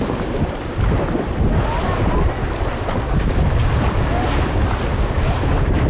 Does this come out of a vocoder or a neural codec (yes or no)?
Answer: no